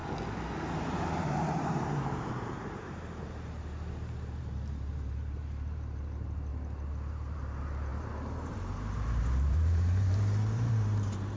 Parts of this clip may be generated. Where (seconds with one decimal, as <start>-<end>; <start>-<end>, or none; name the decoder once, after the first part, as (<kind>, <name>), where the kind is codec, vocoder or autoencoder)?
0.5-6.5 (vocoder, BigVGAN v2); 7.1-11.4